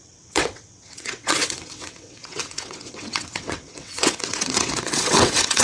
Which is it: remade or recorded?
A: remade